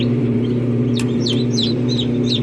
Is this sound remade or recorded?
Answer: remade